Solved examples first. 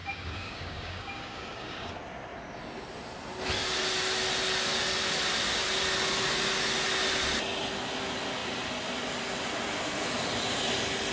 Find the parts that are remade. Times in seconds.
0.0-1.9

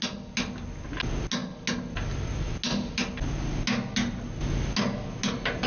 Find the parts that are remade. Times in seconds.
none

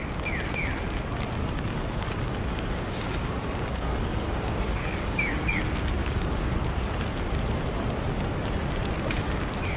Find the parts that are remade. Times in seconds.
1.4-5.6; 6.0-6.6

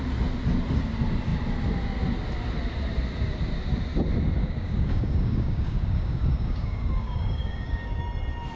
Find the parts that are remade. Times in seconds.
4.4-8.0